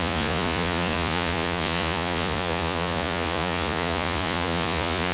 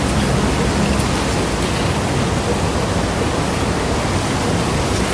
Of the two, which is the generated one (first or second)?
first